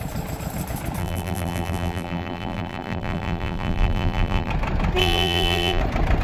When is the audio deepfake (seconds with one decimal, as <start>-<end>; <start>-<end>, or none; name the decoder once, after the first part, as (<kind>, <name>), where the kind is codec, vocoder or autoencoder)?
1.0-4.5 (vocoder, BigVGAN v2); 5.0-5.8